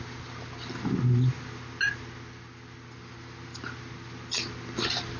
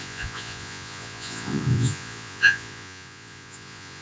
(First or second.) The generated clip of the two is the second